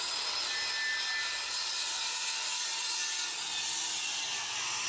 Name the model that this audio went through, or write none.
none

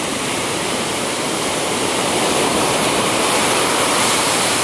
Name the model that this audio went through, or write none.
vocoder, BigVGAN v2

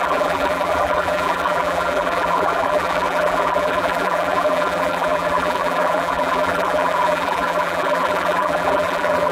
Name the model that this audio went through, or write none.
vocoder, BigVGAN v2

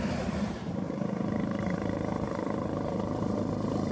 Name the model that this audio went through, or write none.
vocoder, BigVGAN v2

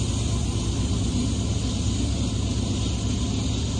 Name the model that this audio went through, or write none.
none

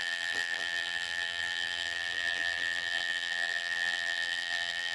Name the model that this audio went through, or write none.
vocoder, BigVGAN v2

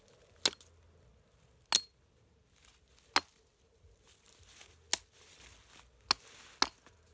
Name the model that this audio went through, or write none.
none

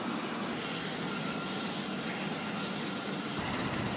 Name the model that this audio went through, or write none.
none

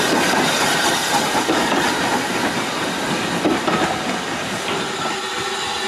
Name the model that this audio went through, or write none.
vocoder, BigVGAN v2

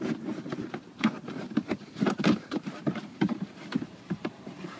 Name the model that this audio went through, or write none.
vocoder, BigVGAN v2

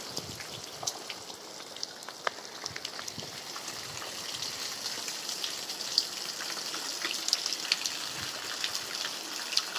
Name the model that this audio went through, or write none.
none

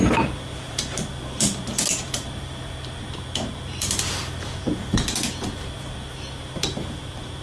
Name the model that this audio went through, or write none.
vocoder, BigVGAN v2